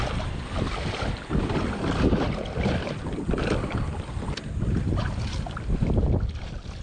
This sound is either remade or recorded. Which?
recorded